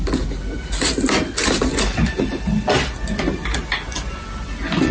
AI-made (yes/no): no